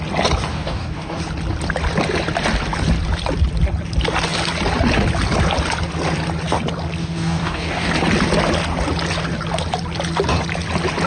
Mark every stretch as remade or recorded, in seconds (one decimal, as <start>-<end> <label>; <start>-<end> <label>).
0.0-0.5 recorded; 0.5-1.2 remade; 1.2-7.0 recorded; 7.0-7.9 remade; 7.9-11.1 recorded